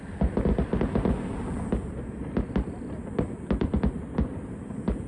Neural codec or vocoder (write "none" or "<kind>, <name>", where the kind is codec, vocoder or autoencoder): none